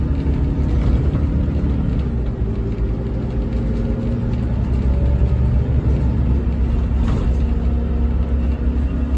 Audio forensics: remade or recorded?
recorded